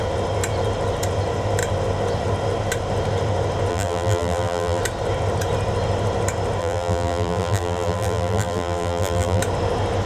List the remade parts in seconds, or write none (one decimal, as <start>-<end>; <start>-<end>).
3.7-4.8; 6.6-9.4